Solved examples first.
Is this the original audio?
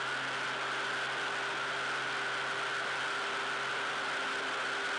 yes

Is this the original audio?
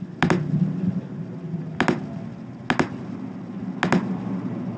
yes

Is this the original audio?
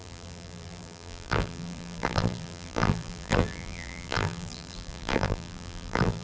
no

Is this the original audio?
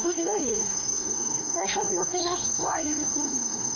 no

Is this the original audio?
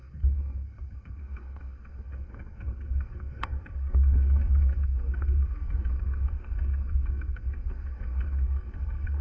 no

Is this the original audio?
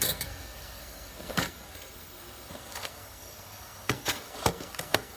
no